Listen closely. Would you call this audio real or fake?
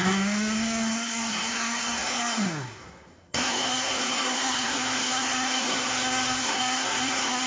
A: fake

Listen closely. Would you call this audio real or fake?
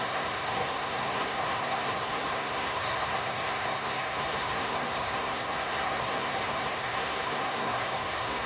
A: fake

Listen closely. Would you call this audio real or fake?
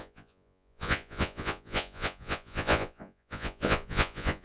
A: fake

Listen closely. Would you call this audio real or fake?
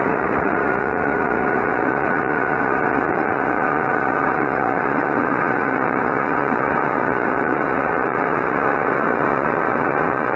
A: fake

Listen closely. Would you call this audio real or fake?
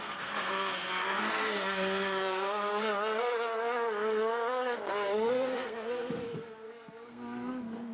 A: fake